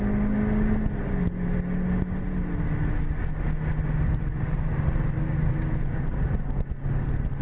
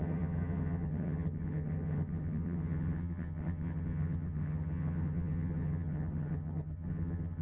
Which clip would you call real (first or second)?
first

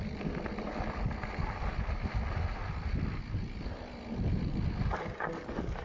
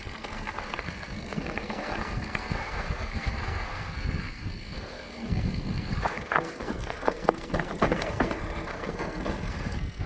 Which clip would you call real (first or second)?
first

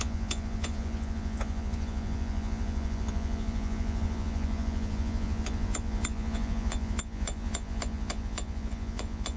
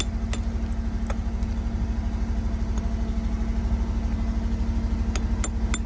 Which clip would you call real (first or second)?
second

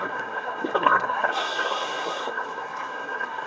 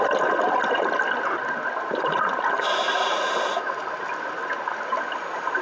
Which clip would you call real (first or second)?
second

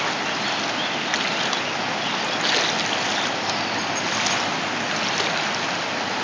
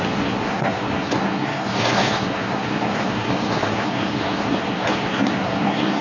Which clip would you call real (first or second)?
first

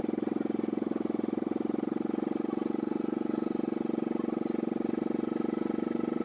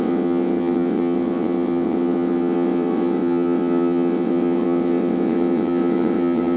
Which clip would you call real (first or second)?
first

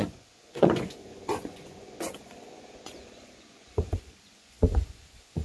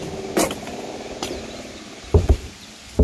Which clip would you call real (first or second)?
second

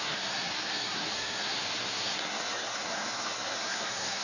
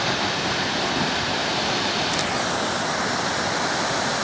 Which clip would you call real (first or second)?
second